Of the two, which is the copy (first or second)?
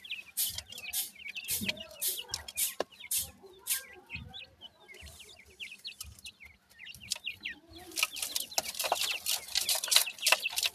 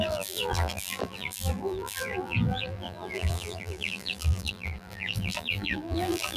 second